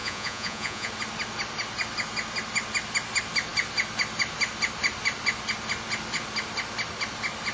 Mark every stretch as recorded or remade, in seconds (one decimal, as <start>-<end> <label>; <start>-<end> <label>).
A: 0.0-0.9 remade; 0.9-7.5 recorded